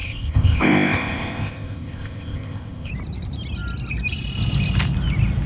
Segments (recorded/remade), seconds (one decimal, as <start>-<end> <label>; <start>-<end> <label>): 0.0-2.9 remade; 2.9-5.5 recorded